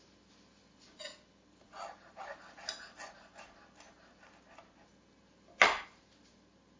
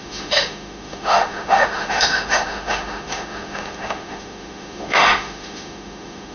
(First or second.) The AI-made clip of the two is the second